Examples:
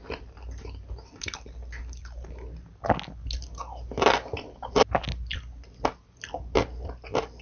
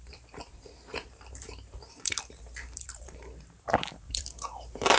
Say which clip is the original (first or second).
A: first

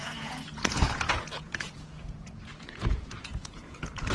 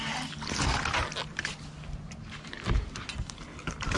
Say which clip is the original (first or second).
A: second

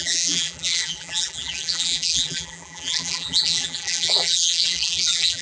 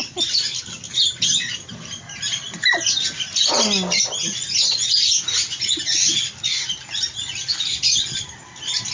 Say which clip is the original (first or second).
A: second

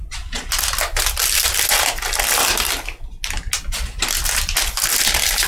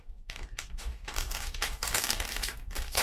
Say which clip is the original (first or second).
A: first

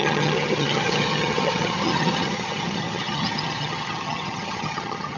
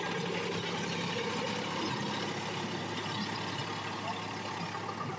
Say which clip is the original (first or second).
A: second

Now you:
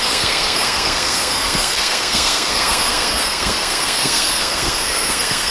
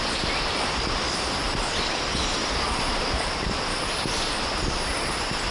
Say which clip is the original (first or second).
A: second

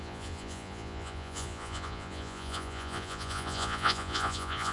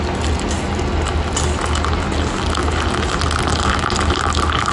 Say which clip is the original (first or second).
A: second